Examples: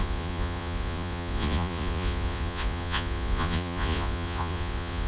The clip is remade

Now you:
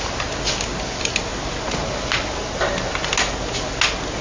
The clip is recorded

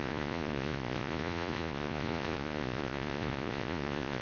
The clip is remade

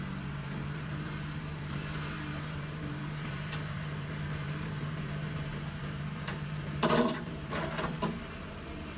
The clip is remade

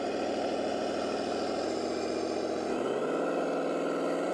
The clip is recorded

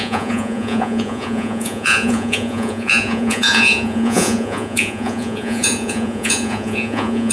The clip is remade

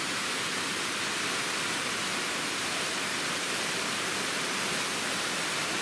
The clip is recorded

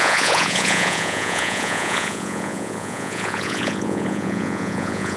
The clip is remade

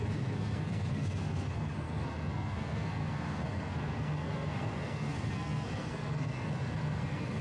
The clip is remade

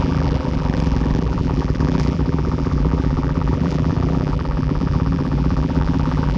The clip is remade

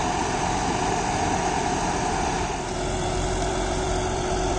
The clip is remade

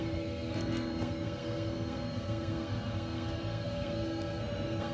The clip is remade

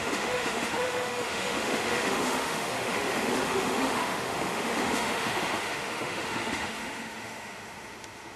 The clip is remade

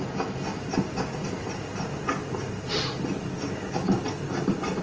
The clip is recorded